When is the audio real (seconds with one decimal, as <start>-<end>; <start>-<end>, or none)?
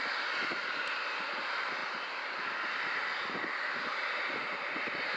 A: 0.0-5.2